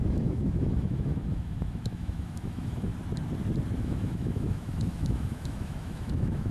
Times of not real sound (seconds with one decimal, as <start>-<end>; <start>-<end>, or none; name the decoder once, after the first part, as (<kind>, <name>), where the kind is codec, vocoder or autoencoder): 0.0-2.9 (autoencoder, DAC-VAE); 3.8-6.5